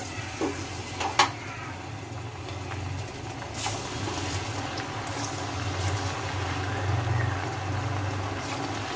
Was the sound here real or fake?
real